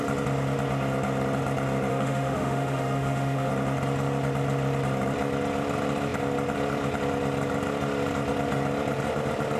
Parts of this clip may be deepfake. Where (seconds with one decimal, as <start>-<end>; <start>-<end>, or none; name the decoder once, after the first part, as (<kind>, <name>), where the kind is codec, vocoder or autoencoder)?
1.9-3.5 (autoencoder, DAC-VAE)